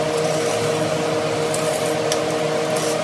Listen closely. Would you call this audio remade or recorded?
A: recorded